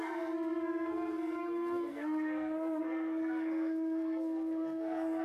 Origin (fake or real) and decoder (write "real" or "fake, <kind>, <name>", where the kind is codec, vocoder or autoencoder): fake, codec, SNAC